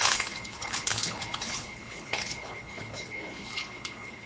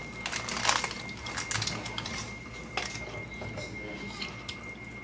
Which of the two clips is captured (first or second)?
second